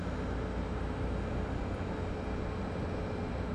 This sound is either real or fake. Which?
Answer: real